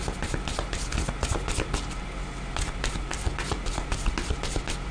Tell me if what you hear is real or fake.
real